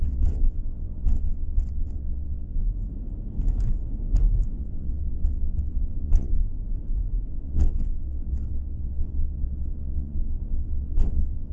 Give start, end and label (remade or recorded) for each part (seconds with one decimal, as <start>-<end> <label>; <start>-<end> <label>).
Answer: 0.0-2.6 remade; 2.6-4.6 recorded; 4.6-6.4 remade; 6.4-7.3 recorded; 7.3-11.5 remade